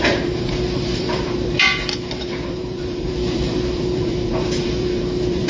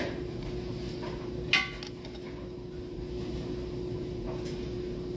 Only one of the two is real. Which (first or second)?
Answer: second